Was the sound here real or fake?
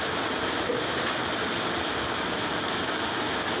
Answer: real